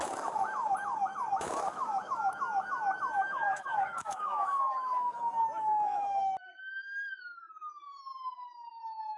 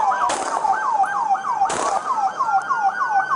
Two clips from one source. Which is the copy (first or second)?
first